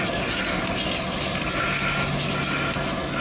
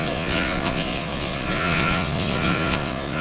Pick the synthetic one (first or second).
second